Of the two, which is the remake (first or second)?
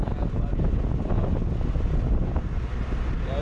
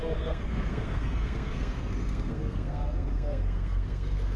second